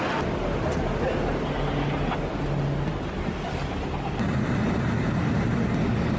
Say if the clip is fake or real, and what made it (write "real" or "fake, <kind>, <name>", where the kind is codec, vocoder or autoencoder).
real